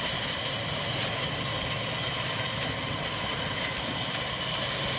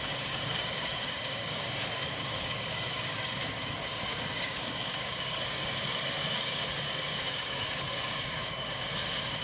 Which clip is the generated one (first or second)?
second